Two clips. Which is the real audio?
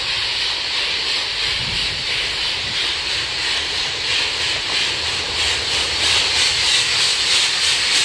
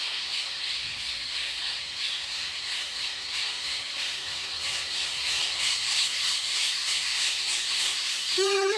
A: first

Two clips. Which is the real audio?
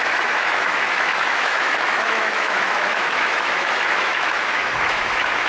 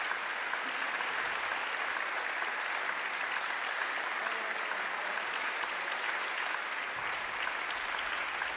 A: second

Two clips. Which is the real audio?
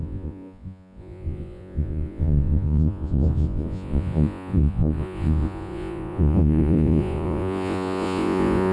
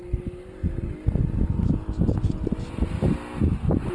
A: second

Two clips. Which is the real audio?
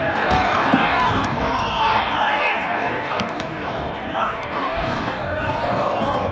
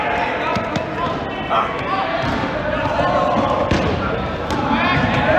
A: second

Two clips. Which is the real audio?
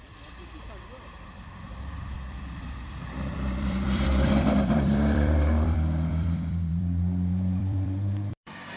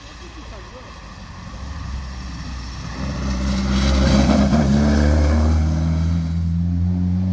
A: second